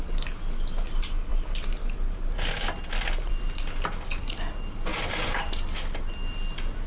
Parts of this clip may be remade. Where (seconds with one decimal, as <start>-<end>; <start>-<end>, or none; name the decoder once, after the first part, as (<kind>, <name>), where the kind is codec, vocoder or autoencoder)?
none